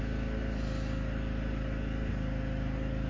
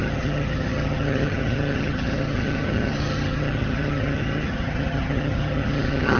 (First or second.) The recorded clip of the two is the first